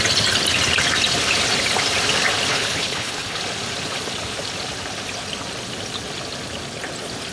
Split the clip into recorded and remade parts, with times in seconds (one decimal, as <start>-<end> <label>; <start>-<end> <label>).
0.0-2.5 recorded; 2.5-3.4 remade; 3.4-7.3 recorded